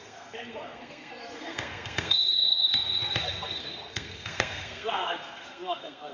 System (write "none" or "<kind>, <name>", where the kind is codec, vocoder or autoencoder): codec, SNAC